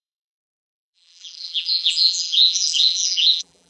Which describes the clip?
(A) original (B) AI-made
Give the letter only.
B